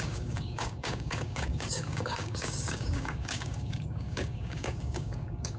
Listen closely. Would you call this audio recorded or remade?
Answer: remade